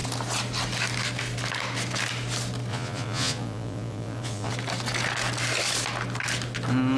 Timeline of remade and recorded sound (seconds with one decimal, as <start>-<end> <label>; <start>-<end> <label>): 0.0-2.7 recorded; 2.7-4.5 remade; 4.5-7.0 recorded